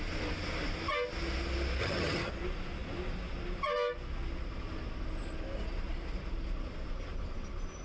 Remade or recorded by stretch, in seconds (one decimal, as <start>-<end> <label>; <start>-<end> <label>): 0.0-1.8 recorded; 1.8-2.3 remade; 2.3-7.8 recorded